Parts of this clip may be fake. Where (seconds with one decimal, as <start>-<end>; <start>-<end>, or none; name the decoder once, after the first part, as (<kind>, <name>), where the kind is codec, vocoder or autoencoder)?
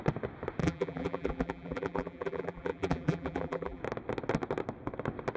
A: 0.6-3.8 (vocoder, BigVGAN v2)